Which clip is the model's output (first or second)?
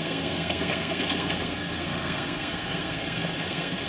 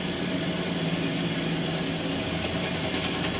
first